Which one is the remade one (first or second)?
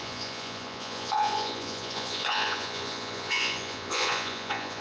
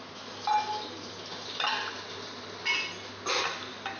first